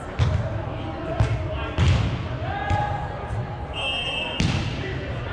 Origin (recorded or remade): recorded